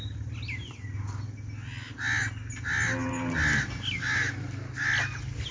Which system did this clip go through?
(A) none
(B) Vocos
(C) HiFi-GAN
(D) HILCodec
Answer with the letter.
A